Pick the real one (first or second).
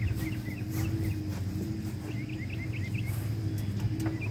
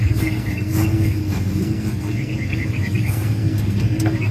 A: first